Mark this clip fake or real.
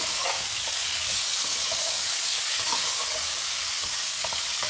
fake